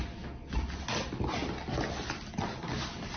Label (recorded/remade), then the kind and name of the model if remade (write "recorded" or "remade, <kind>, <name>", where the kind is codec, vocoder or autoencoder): recorded